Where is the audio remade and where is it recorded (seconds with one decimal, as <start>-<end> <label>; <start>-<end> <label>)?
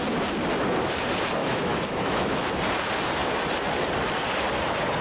0.0-1.4 recorded; 1.4-2.4 remade; 2.4-5.0 recorded